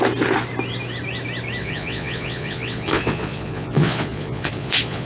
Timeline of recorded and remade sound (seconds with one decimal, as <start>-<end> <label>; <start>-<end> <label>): 0.0-1.6 recorded; 1.6-5.1 remade